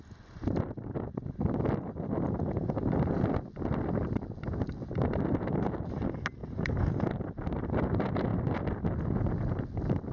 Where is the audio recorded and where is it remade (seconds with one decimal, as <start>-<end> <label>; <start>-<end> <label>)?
0.0-6.4 recorded; 6.4-7.0 remade; 7.0-10.1 recorded